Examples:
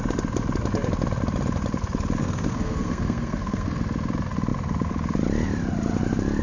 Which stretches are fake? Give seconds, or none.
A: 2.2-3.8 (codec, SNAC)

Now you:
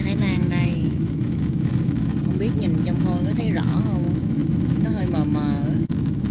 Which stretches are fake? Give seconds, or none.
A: 0.0-2.1 (autoencoder, DAC-VAE); 3.0-6.3

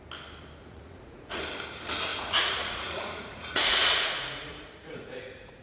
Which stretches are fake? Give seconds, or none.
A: 0.6-1.4 (vocoder, Vocos); 2.1-5.6